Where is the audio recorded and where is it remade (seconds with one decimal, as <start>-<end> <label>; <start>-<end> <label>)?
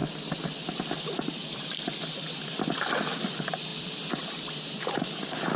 0.0-1.4 recorded; 1.4-2.0 remade; 2.0-3.7 recorded; 3.7-4.5 remade; 4.5-5.6 recorded